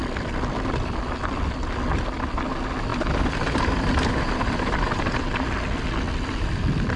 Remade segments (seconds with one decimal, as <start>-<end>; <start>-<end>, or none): 2.9-5.2